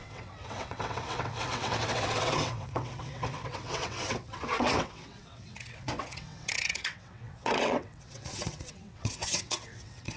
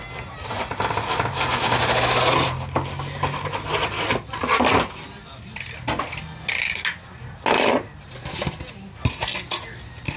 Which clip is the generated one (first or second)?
first